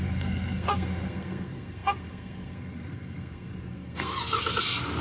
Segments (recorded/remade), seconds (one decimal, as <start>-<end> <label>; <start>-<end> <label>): 0.0-4.1 remade; 4.1-5.0 recorded